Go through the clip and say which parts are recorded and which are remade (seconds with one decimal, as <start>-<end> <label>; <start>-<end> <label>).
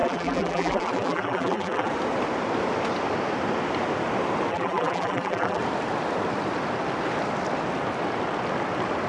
0.0-1.9 remade; 1.9-4.5 recorded; 4.5-5.6 remade; 5.6-9.1 recorded